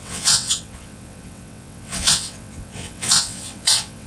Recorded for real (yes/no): no